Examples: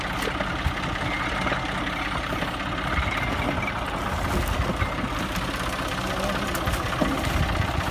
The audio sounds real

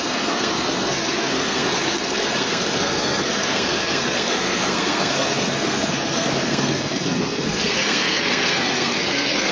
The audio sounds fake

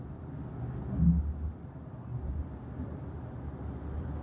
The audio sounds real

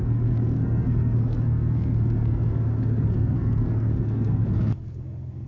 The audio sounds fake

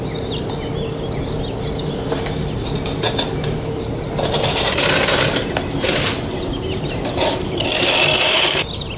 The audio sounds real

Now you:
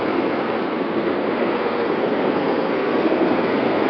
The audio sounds fake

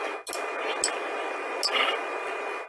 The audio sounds real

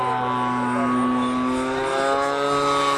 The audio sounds real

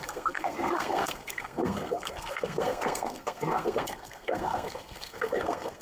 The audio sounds fake